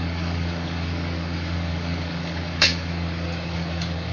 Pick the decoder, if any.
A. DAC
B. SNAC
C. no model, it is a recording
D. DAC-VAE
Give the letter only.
A